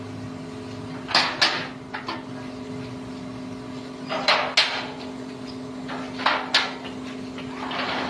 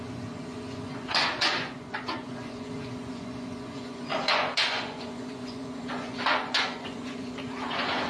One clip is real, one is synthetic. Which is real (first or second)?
first